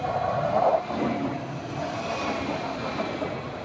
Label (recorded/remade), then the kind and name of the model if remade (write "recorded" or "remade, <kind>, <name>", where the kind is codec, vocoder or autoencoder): recorded